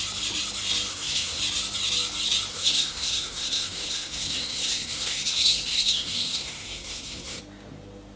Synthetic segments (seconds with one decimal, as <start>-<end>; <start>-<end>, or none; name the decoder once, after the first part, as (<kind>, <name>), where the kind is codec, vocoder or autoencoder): 0.9-1.4 (codec, SNAC); 2.5-7.4